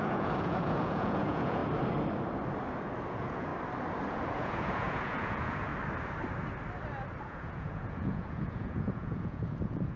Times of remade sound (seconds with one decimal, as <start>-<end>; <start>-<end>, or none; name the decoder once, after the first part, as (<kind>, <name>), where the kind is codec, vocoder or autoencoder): 0.0-1.6 (vocoder, Vocos); 3.1-3.5; 4.1-5.7; 7.2-10.0